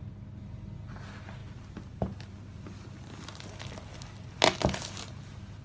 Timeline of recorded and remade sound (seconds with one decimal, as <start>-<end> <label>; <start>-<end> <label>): 0.0-5.6 recorded